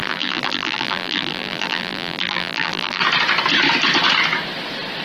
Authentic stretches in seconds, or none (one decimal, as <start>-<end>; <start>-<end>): 3.0-5.0

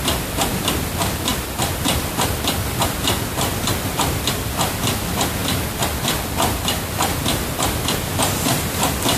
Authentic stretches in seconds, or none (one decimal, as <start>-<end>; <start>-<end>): none

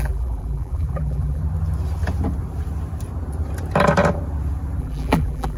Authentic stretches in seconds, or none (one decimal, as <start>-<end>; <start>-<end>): 1.4-4.8

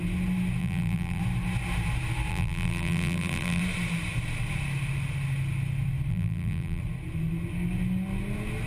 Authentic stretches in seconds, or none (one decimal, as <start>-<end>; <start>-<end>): 0.0-0.6; 1.2-2.3; 3.6-6.1; 6.8-8.7